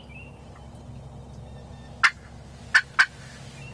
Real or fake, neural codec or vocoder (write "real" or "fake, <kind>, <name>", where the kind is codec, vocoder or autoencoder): real